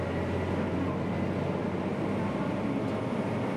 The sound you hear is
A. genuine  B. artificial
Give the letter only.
A